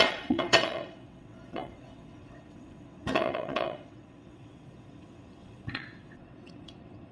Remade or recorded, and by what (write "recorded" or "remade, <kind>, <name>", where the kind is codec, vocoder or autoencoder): remade, vocoder, WaveNeXt